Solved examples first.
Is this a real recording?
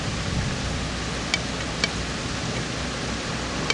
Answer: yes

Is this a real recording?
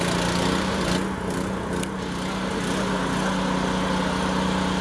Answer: yes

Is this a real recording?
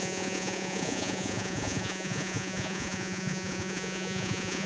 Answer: no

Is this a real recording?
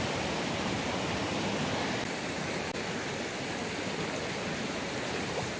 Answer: yes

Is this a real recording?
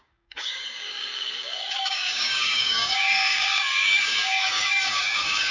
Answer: no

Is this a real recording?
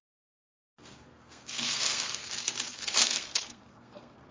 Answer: no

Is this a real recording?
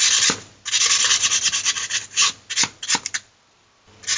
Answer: yes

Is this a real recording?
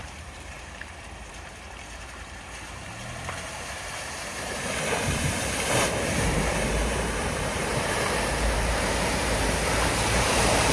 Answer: no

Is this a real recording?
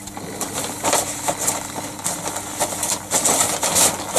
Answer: yes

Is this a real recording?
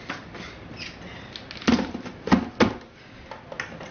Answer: yes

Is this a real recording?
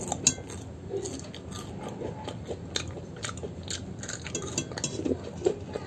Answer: yes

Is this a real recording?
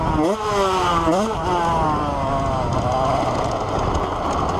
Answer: yes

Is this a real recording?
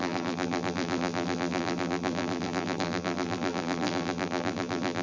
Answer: no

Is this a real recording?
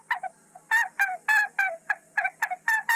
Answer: yes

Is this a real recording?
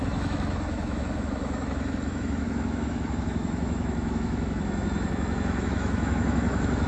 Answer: no